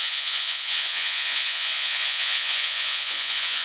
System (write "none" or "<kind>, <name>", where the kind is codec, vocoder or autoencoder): vocoder, Vocos